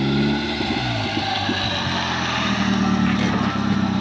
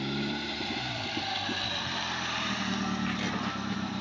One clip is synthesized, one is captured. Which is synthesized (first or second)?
second